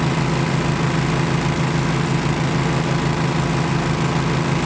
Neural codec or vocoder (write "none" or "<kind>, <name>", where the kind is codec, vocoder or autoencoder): none